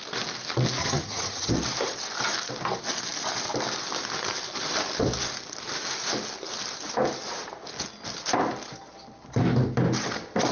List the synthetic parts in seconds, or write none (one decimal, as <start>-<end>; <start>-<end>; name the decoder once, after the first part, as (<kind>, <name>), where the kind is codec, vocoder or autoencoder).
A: 0.8-1.5 (vocoder, HiFi-GAN)